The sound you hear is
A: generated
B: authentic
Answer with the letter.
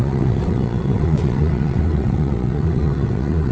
A